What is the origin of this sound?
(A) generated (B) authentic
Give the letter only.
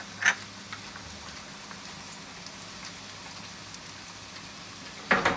B